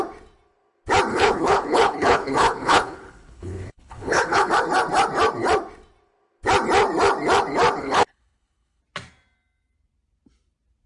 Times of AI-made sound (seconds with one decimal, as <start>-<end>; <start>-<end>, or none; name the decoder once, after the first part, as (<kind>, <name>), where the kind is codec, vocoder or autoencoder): 1.1-4.5 (codec, HILCodec); 7.8-8.8